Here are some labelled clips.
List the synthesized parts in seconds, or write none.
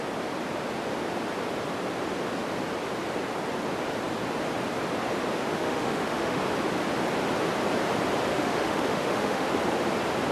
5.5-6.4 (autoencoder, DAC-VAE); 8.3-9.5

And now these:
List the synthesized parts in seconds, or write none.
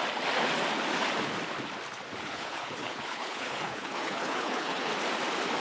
2.2-4.9 (codec, HILCodec)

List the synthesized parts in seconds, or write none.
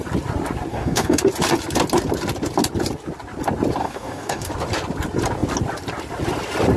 0.7-1.2 (codec, DAC); 3.8-4.5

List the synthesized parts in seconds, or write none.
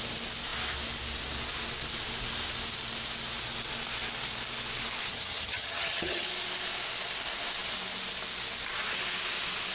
5.0-6.3 (vocoder, HiFi-GAN)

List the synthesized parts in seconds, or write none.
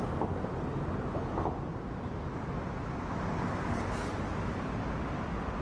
none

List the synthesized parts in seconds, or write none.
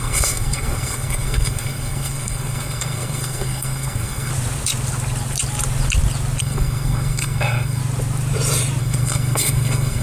0.0-4.3 (codec, SNAC); 6.4-7.8; 8.8-10.0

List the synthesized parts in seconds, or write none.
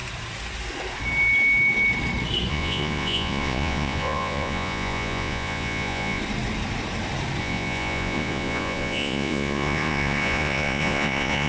2.5-6.2 (vocoder, Vocos); 7.4-11.5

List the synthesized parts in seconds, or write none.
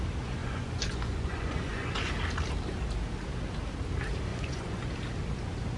0.4-1.9 (vocoder, Vocos); 4.3-4.8